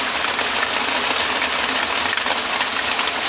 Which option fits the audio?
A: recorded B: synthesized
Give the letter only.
A